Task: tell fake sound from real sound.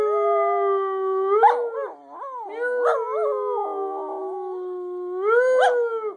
real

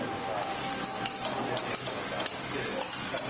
real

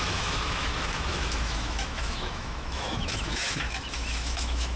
fake